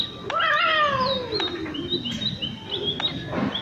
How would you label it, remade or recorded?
recorded